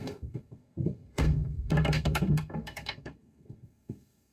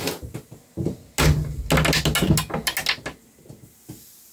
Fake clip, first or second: first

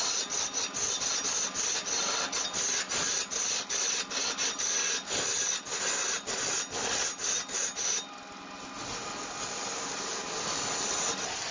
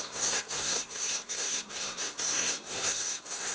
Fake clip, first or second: second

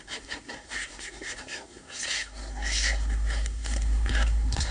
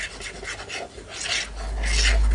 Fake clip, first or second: first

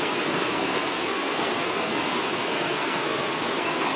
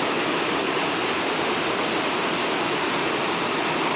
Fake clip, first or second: first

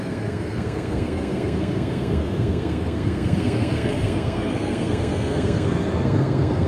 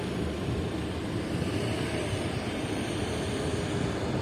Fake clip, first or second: first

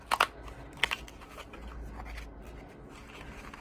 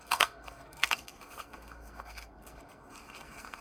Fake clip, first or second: second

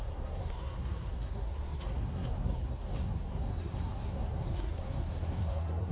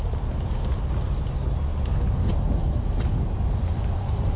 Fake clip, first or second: first